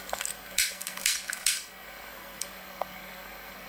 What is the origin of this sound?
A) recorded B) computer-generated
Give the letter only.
B